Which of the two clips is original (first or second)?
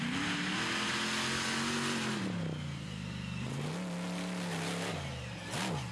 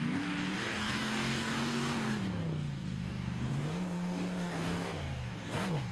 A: first